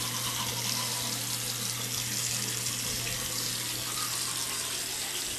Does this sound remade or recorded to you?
recorded